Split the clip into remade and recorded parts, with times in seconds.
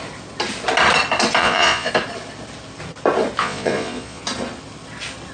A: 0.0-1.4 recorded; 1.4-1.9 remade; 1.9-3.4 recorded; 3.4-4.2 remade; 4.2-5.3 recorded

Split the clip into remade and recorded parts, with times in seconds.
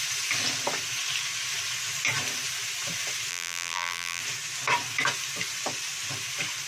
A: 0.0-3.3 recorded; 3.3-4.2 remade; 4.2-6.7 recorded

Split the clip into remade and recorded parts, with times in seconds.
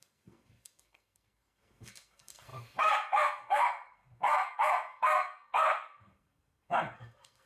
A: 0.0-7.5 remade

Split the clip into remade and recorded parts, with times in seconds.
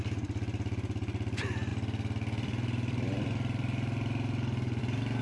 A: 0.0-1.7 recorded; 1.7-4.8 remade; 4.8-5.2 recorded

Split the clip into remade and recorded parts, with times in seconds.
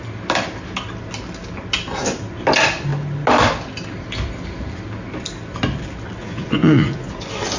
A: 0.0-6.2 recorded; 6.2-7.1 remade; 7.1-7.6 recorded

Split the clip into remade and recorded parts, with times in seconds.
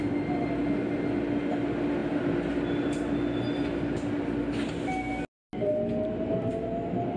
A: 0.0-7.2 recorded